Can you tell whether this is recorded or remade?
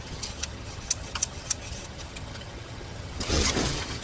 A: remade